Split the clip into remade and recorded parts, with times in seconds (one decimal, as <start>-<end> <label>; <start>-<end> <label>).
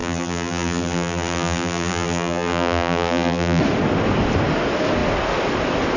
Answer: 0.0-3.6 remade; 3.6-6.0 recorded